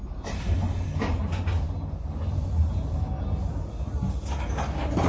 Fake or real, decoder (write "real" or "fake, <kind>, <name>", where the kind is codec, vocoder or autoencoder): real